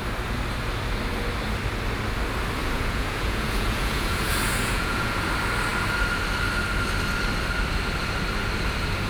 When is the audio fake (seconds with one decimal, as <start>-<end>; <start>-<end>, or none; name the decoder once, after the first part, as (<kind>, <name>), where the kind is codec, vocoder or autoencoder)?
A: 2.6-5.3 (vocoder, Vocos)

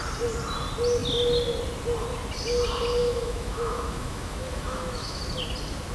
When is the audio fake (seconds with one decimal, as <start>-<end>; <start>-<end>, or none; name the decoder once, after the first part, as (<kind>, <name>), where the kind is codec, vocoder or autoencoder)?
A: 3.0-5.2 (autoencoder, DAC-VAE)

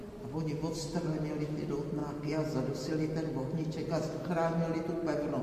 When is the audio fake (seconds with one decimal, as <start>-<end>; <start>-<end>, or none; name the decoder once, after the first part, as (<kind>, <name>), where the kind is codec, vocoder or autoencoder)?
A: none